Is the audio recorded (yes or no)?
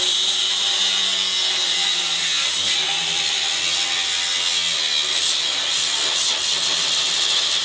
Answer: yes